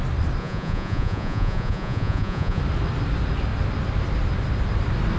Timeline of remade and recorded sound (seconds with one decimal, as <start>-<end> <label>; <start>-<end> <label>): 0.0-0.4 recorded; 0.4-2.6 remade; 2.6-5.2 recorded

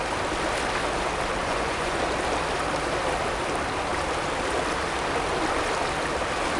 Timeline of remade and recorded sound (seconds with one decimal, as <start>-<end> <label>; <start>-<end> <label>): 0.0-1.4 recorded; 1.4-2.0 remade; 2.0-6.6 recorded

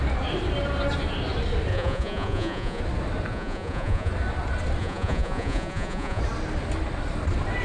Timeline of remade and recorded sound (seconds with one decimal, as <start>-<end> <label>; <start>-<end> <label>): 0.0-1.7 recorded; 1.7-2.8 remade; 2.8-3.3 recorded; 3.3-4.1 remade; 4.1-4.8 recorded; 4.8-6.2 remade; 6.2-7.6 recorded

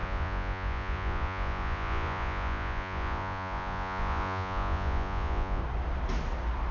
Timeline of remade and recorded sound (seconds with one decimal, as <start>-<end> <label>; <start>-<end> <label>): 0.0-5.6 remade; 5.6-6.7 recorded

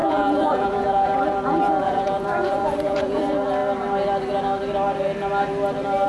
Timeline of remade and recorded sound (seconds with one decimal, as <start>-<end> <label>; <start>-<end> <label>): 0.0-3.2 remade; 3.2-6.1 recorded